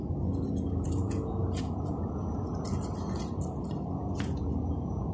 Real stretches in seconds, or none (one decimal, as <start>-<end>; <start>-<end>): 2.5-4.2

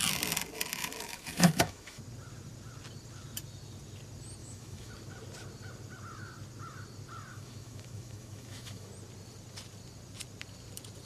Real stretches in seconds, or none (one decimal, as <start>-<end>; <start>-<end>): 0.0-0.8; 2.0-4.4; 4.9-7.3; 8.9-11.1

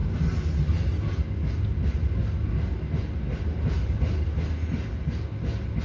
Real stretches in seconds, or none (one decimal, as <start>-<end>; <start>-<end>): 0.0-5.8

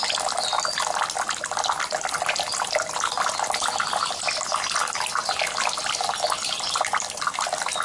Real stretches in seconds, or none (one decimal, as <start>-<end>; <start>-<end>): 0.0-7.8

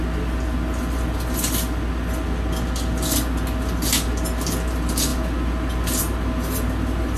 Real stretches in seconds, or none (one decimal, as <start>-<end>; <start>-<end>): 0.0-7.2